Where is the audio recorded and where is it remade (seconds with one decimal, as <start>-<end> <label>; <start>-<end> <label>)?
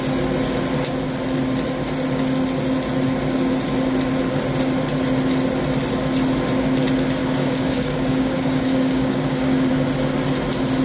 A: 0.0-7.2 recorded; 7.2-9.7 remade; 9.7-10.8 recorded